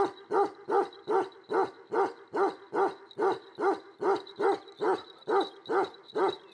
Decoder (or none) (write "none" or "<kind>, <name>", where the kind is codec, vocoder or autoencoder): none